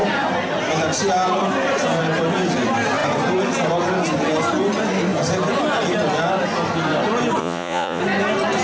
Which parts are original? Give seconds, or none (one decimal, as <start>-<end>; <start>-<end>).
0.0-7.4; 8.0-8.6